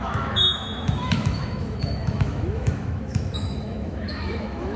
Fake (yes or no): yes